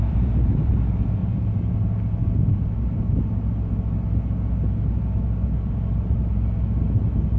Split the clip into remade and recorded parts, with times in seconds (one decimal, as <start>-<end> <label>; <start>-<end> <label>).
0.0-0.7 remade; 0.7-1.2 recorded; 1.2-1.7 remade; 1.7-7.4 recorded